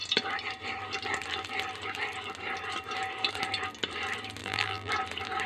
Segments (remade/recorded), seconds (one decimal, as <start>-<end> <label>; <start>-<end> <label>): 0.0-4.4 recorded; 4.4-4.9 remade; 4.9-5.5 recorded